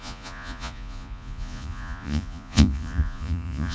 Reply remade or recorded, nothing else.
remade